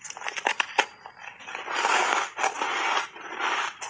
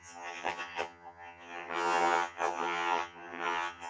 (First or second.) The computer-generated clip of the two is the second